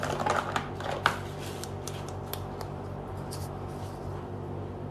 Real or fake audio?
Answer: real